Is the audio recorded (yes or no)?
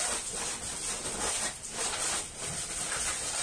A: yes